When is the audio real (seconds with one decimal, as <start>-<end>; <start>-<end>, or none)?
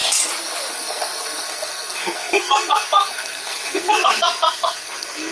0.0-0.7